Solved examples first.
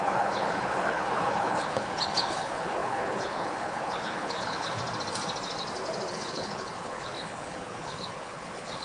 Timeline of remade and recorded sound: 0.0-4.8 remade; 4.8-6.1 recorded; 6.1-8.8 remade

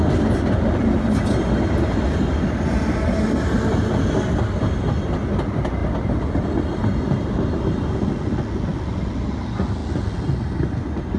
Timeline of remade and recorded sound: 0.0-11.2 recorded

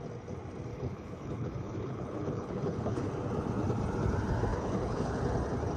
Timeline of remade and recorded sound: 0.0-0.7 recorded; 0.7-3.1 remade; 3.1-4.5 recorded; 4.5-5.2 remade; 5.2-5.8 recorded